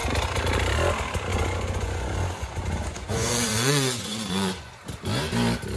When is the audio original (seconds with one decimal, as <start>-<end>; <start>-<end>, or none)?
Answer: 0.0-1.3; 4.8-5.8